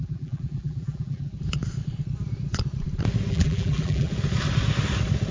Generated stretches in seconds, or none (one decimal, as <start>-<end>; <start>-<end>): 0.0-1.3; 3.3-4.1